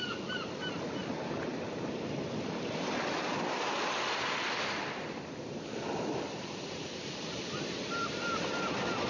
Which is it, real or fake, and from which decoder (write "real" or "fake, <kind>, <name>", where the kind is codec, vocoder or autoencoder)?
fake, vocoder, BigVGAN v2